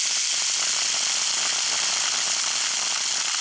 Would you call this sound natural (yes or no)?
yes